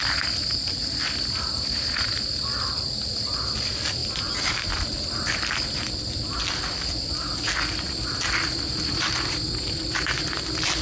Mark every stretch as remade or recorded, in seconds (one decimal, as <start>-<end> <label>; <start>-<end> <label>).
0.0-10.8 recorded